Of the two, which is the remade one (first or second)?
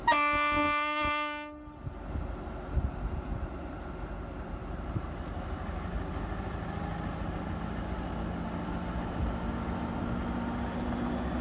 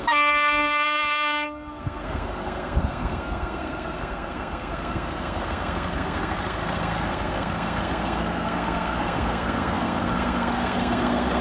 second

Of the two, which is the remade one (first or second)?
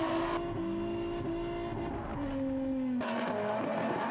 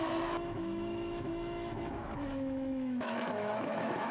second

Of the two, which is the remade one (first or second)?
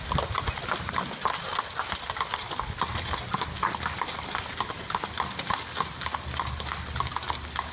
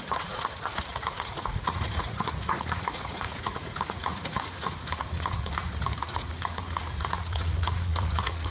second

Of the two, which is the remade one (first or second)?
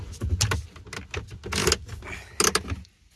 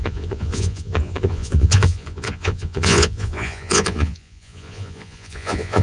second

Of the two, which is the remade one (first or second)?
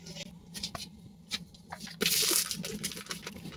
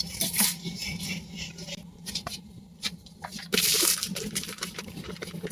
second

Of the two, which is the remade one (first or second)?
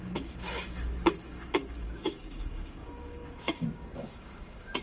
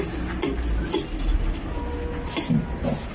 first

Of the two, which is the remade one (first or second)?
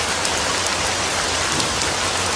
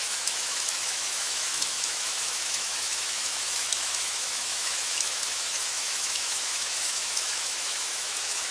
second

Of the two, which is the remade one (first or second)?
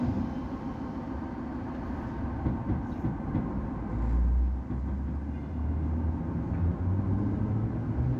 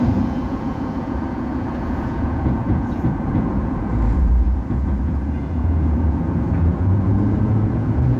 second